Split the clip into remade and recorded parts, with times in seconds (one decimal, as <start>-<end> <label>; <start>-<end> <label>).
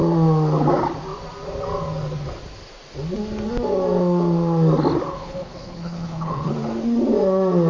0.0-5.1 recorded; 5.1-6.5 remade; 6.5-7.7 recorded